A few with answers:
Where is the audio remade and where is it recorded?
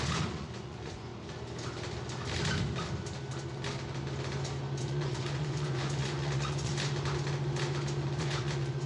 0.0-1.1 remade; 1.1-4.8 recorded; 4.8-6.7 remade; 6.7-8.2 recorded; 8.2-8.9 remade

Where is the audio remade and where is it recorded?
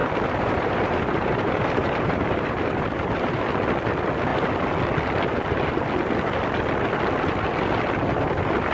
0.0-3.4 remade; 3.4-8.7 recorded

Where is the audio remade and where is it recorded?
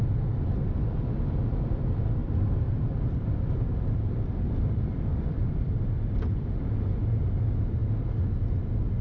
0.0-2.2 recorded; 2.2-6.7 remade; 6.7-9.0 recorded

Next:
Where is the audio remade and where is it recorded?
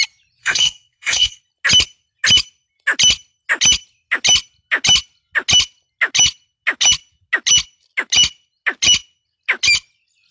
0.0-0.4 recorded; 0.4-1.4 remade; 1.4-10.3 recorded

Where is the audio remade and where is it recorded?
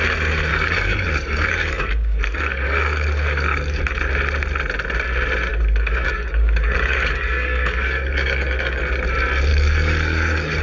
0.0-0.5 recorded; 0.5-3.8 remade; 3.8-5.5 recorded; 5.5-8.8 remade; 8.8-9.5 recorded; 9.5-10.6 remade